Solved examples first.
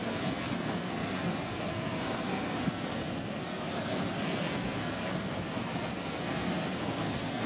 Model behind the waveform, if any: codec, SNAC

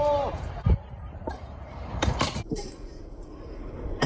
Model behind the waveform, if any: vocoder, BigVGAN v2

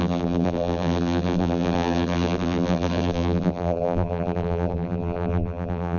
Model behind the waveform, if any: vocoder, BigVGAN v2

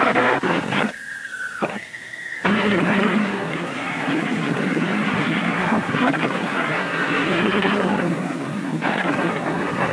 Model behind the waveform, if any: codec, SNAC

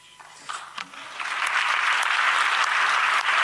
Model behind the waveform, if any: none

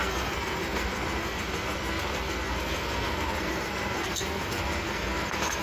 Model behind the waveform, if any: codec, SNAC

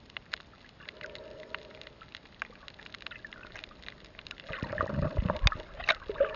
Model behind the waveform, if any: none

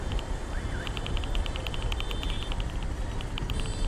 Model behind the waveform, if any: none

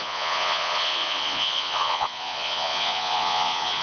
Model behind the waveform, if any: vocoder, Vocos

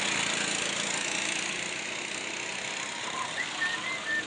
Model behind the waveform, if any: none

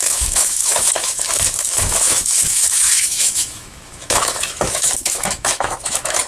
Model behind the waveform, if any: autoencoder, DAC-VAE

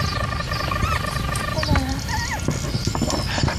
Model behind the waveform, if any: none